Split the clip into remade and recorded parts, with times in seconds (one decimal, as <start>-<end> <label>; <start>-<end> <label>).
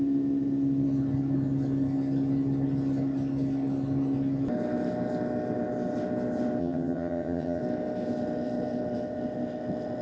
0.0-6.6 recorded; 6.6-7.6 remade; 7.6-10.0 recorded